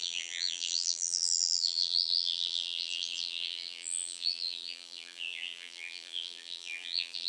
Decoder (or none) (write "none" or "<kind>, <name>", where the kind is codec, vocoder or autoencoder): vocoder, BigVGAN v2